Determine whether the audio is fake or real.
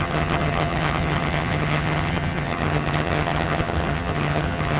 fake